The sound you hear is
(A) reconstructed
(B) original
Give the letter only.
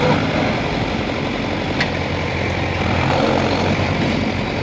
B